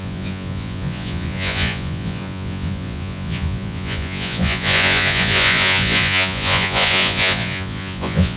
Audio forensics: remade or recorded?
remade